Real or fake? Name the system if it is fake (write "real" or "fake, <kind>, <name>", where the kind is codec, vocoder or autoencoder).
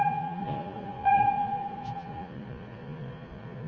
fake, vocoder, Vocos